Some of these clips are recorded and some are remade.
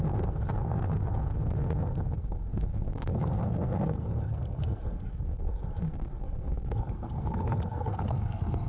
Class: remade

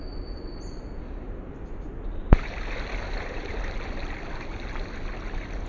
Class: recorded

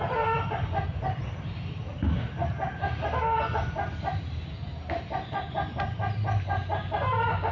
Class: recorded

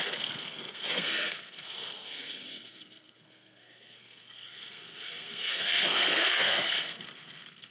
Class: remade